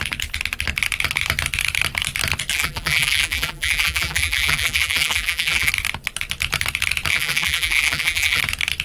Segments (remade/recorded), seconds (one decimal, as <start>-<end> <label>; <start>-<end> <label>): 0.0-2.5 recorded; 2.5-5.7 remade; 5.7-7.1 recorded; 7.1-8.4 remade; 8.4-8.8 recorded